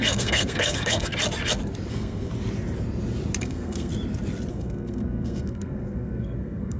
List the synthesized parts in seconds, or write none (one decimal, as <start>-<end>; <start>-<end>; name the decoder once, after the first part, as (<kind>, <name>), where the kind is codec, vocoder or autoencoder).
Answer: 0.0-1.1 (codec, SNAC); 1.9-2.3; 3.4-3.9; 4.5-6.8